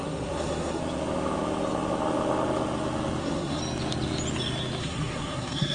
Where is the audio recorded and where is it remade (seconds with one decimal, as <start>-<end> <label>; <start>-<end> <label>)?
0.0-0.8 remade; 0.8-3.2 recorded; 3.2-3.6 remade; 3.6-4.8 recorded; 4.8-5.7 remade